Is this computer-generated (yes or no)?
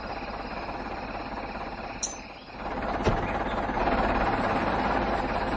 no